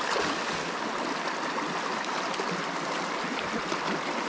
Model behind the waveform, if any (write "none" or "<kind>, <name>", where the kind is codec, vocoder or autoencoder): none